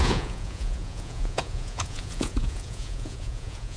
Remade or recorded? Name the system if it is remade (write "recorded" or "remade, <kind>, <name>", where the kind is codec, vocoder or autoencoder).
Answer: remade, vocoder, Vocos